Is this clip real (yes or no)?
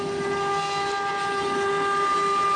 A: yes